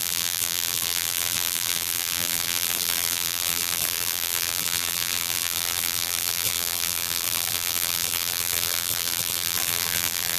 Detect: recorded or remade remade